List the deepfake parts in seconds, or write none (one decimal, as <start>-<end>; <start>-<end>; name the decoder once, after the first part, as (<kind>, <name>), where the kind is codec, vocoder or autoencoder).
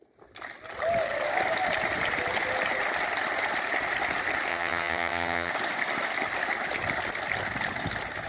4.5-5.5 (vocoder, HiFi-GAN)